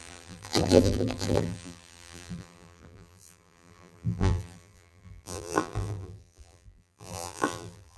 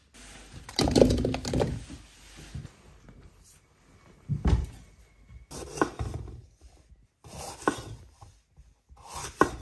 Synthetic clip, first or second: first